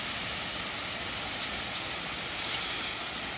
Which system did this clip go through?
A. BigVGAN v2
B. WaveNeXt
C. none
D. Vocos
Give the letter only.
C